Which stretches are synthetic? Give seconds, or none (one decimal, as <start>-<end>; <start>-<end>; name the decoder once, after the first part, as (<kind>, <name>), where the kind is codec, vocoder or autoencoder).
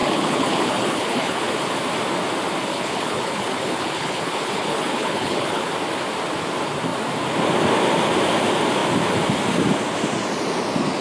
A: 0.0-1.4 (codec, HILCodec); 2.7-5.7